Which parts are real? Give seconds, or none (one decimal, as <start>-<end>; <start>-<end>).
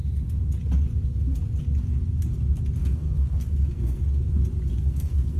0.0-2.8; 4.0-4.7